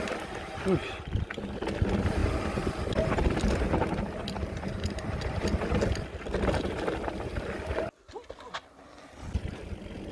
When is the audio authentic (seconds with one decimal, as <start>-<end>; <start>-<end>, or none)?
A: 0.0-10.1